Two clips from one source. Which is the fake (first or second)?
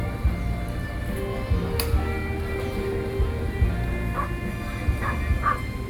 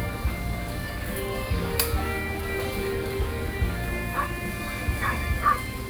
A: second